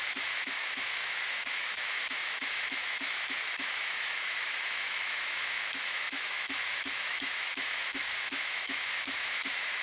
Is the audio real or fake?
fake